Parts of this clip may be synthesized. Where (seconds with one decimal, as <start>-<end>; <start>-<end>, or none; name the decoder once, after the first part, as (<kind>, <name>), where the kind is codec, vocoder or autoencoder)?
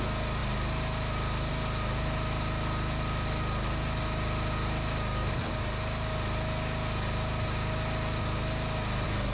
none